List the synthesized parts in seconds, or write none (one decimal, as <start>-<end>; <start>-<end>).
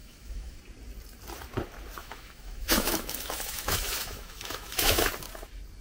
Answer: 0.0-0.6; 2.0-5.1